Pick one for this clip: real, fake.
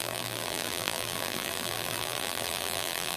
fake